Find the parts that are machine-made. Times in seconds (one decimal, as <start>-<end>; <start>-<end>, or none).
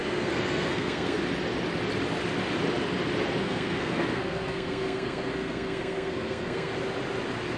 0.0-1.2; 3.4-6.7